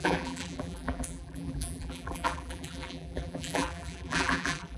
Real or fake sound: fake